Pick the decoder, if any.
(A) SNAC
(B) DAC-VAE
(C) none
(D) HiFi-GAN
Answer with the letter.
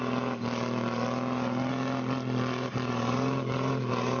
C